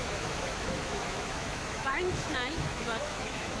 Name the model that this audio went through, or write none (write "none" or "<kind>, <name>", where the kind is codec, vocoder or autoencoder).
autoencoder, DAC-VAE